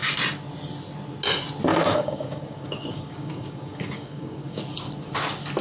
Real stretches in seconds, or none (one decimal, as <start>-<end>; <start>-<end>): 0.0-1.7; 4.6-5.6